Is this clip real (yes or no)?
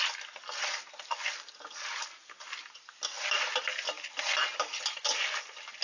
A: yes